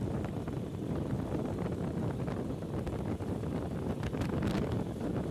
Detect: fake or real real